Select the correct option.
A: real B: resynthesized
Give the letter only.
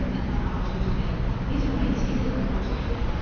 B